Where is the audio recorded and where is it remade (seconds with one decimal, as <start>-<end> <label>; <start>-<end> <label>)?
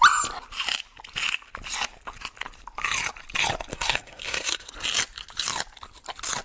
0.0-3.7 recorded; 3.7-4.7 remade; 4.7-6.4 recorded